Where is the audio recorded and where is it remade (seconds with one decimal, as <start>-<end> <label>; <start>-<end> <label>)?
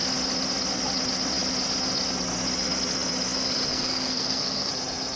0.0-3.7 recorded; 3.7-4.7 remade; 4.7-5.2 recorded